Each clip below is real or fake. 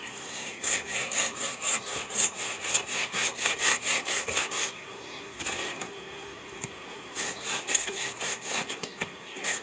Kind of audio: fake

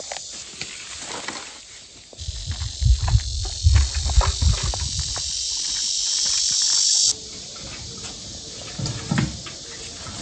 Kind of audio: real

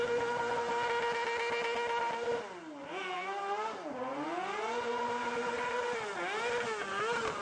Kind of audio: real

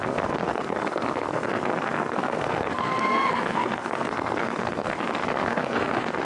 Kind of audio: fake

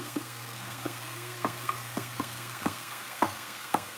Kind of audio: fake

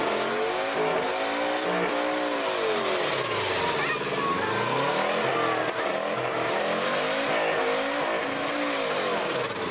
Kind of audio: real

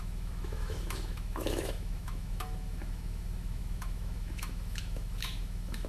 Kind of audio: fake